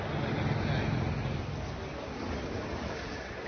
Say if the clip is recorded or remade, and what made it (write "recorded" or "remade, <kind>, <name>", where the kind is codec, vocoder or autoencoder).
recorded